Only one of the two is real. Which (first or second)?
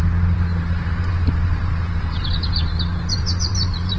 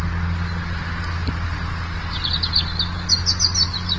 second